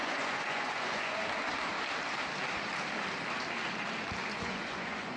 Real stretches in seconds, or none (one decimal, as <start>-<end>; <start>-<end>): 1.2-4.3